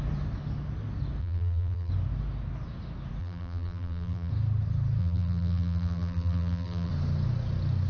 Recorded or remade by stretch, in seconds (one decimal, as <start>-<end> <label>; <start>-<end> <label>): 0.0-1.2 recorded; 1.2-1.9 remade; 1.9-3.2 recorded; 3.2-4.3 remade; 4.3-5.0 recorded; 5.0-6.9 remade; 6.9-7.9 recorded